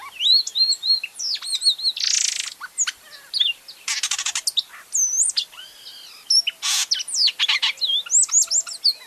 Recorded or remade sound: recorded